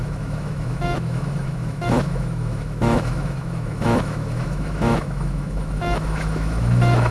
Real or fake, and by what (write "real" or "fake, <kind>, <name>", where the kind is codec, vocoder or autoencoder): fake, autoencoder, DAC-VAE